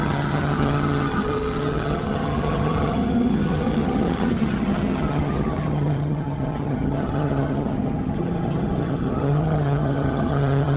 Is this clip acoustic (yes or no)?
no